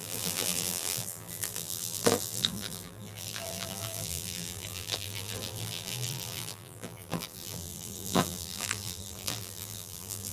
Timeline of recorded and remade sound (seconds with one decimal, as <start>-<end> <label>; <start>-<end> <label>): 0.0-10.3 remade